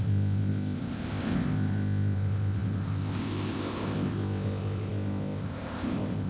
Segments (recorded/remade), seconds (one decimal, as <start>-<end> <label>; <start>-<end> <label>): 0.0-6.3 remade